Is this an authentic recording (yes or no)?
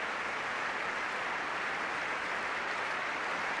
yes